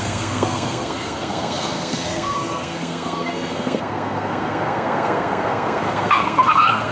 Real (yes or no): no